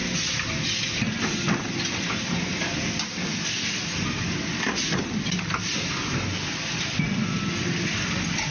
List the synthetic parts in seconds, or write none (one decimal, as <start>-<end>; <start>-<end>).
none